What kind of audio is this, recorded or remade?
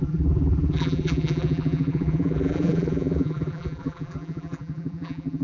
remade